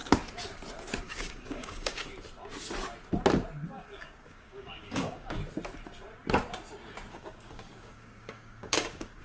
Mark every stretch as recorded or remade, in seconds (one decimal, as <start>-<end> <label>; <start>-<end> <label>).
0.0-1.0 recorded; 1.0-2.1 remade; 2.1-3.7 recorded; 3.7-5.4 remade; 5.4-7.1 recorded; 7.1-9.2 remade